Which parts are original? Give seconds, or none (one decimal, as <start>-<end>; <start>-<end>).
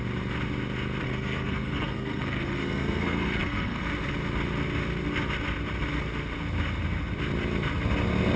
0.0-1.0; 3.8-8.4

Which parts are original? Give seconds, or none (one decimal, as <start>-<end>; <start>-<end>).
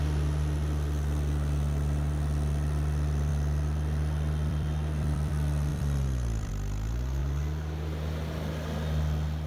0.0-3.3; 5.3-5.7; 6.5-7.2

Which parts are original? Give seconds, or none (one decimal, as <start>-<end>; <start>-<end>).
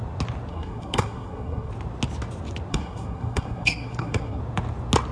0.0-0.5; 1.7-2.7; 4.4-5.1